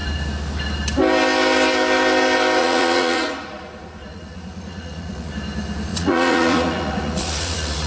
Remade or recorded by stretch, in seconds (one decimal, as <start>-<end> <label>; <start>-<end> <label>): 0.0-2.6 recorded; 2.6-5.3 remade; 5.3-5.9 recorded; 5.9-7.9 remade